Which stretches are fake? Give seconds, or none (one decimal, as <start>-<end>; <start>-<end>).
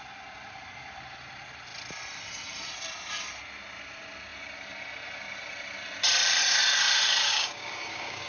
7.3-8.3